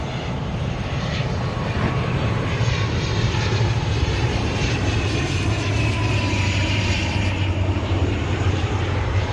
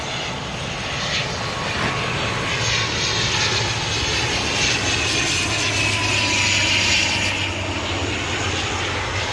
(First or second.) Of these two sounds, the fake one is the first